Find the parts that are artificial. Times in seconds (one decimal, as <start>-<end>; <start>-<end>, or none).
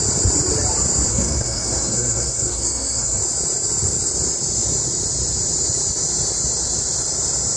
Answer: 1.1-3.2